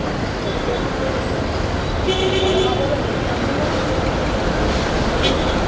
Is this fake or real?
real